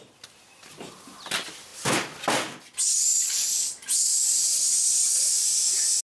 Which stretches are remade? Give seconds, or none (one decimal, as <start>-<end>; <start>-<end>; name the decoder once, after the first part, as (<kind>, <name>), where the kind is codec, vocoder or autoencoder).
none